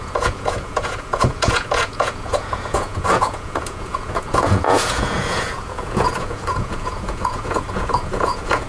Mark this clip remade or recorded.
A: remade